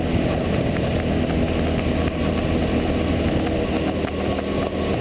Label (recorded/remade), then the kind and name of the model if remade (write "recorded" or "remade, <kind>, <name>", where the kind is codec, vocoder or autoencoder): recorded